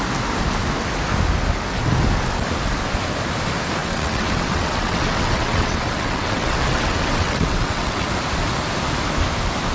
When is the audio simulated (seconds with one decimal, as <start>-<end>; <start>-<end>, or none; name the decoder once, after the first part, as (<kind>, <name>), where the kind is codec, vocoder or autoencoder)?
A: 3.8-8.1 (vocoder, WaveNeXt)